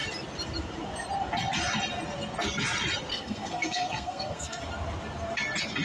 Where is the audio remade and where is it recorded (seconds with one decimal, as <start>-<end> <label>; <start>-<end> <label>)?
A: 0.0-3.1 recorded; 3.1-4.6 remade; 4.6-5.8 recorded